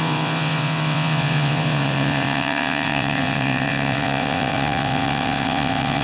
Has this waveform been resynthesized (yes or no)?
yes